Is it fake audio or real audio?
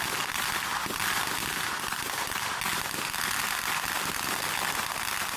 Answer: real